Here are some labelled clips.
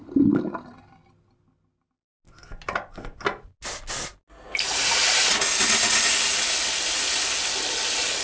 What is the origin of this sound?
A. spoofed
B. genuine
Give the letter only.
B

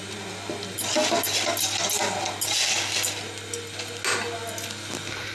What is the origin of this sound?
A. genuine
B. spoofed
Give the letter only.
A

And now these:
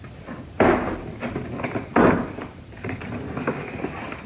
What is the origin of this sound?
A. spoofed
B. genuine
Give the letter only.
B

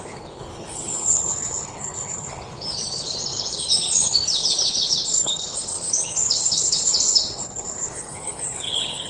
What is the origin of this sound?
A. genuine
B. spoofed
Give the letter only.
B